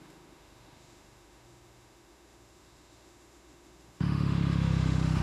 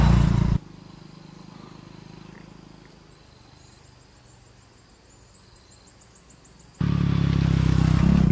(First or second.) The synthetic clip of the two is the first